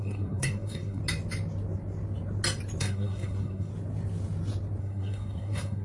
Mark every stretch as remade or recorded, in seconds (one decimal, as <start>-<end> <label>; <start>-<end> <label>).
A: 0.0-1.0 remade; 1.0-2.8 recorded; 2.8-3.7 remade; 3.7-4.8 recorded; 4.8-5.8 remade